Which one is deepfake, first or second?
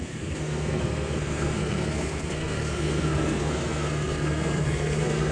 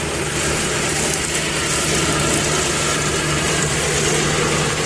first